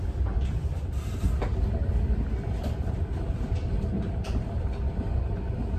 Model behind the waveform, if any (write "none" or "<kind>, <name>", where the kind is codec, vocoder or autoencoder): none